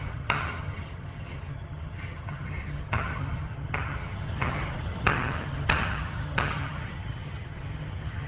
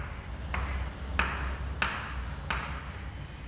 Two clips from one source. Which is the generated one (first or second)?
first